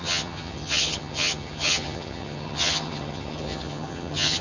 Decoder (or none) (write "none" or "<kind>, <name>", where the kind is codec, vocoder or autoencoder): vocoder, HiFi-GAN